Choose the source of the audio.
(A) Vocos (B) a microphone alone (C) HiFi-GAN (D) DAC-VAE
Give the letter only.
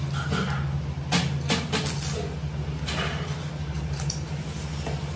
B